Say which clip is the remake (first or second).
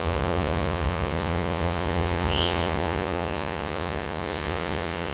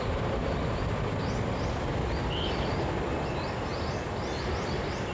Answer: first